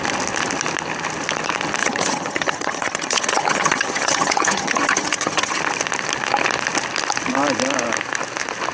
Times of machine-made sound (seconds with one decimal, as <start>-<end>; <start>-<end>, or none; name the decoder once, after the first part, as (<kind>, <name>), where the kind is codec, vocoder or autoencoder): 1.8-5.6 (vocoder, HiFi-GAN)